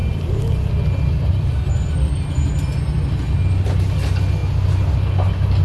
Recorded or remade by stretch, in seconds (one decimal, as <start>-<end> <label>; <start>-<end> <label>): 0.0-5.6 recorded